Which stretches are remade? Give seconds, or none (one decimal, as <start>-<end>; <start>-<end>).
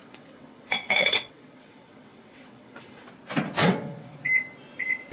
0.0-3.1; 3.6-4.2